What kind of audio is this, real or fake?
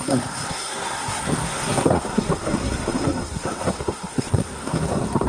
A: fake